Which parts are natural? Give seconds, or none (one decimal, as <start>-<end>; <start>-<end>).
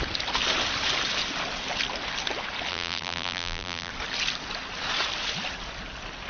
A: 0.0-2.7; 3.9-6.3